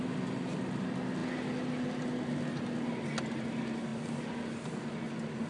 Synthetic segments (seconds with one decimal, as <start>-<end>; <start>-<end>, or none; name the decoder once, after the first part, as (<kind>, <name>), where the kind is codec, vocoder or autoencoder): none